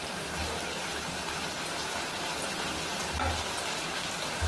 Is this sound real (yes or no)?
no